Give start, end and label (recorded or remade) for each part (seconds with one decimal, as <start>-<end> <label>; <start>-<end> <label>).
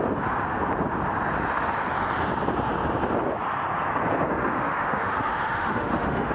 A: 0.0-4.4 recorded; 4.4-6.3 remade